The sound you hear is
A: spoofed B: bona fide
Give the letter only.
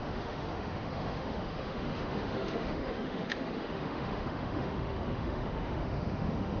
A